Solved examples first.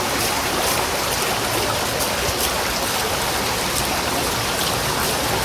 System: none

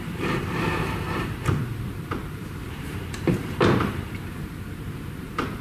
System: vocoder, BigVGAN v2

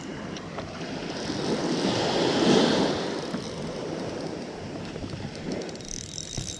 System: vocoder, BigVGAN v2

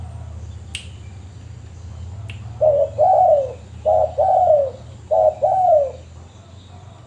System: none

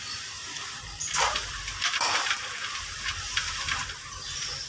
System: vocoder, BigVGAN v2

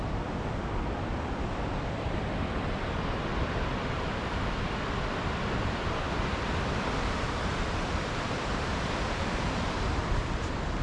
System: vocoder, BigVGAN v2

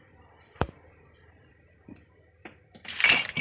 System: vocoder, BigVGAN v2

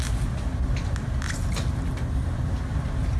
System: none